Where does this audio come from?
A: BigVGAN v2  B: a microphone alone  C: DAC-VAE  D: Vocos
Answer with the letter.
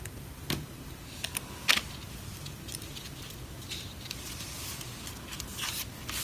B